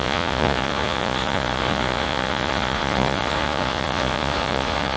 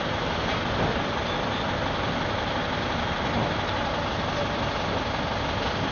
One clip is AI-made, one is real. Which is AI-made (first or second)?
first